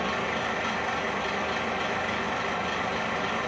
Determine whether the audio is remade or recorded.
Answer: recorded